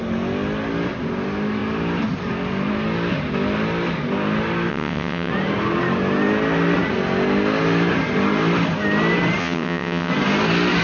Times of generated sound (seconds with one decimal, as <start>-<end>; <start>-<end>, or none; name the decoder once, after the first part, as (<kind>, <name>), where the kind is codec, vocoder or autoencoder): 4.7-5.3 (vocoder, WaveNeXt); 9.4-10.1